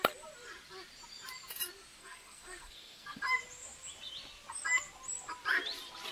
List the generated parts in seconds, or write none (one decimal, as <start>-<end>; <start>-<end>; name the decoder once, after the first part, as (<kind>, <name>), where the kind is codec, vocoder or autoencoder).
2.0-3.2 (codec, SNAC)